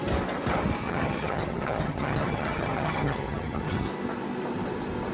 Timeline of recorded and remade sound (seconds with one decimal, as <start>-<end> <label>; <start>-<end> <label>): 0.0-0.8 recorded; 0.8-3.9 remade; 3.9-5.1 recorded